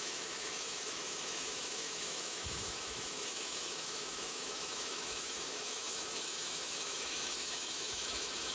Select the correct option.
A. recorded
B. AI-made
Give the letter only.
B